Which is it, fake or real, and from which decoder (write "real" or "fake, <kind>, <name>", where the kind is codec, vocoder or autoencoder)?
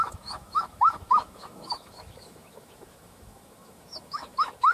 fake, autoencoder, DAC-VAE